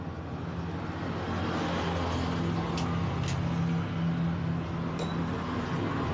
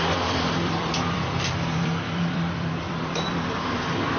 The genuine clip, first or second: first